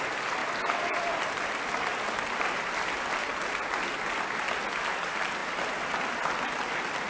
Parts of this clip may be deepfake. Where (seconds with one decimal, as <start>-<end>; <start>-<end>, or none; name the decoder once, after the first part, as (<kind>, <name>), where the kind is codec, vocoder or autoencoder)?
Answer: 0.4-1.1 (vocoder, BigVGAN v2)